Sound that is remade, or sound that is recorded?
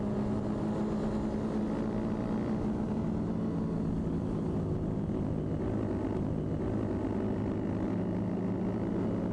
recorded